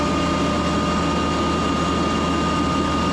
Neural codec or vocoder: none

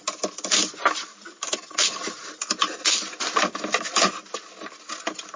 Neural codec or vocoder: none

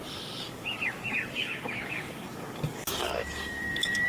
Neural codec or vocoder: codec, DAC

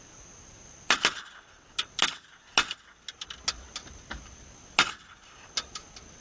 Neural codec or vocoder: none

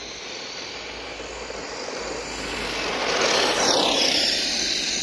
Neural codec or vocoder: none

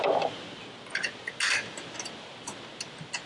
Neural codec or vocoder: none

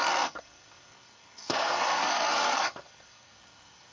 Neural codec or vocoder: codec, SNAC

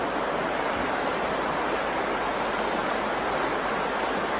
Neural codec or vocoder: none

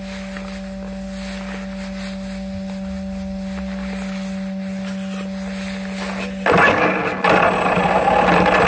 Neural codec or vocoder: none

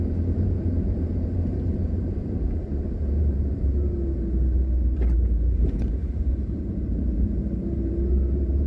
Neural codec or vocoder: vocoder, BigVGAN v2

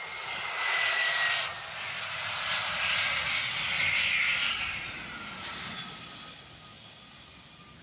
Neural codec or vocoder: none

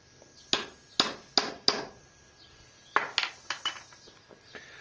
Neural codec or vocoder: none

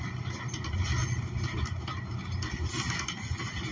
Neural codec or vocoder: none